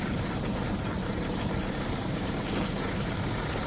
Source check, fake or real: fake